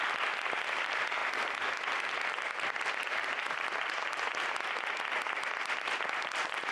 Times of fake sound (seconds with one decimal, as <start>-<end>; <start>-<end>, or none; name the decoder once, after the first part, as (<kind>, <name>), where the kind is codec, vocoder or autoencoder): 0.0-4.0 (vocoder, BigVGAN v2); 4.8-6.7